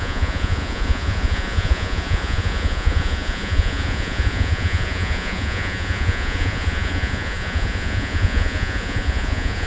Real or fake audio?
fake